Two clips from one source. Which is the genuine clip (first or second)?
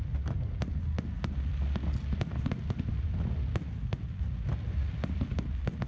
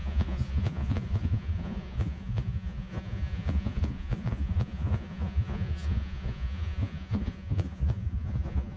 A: first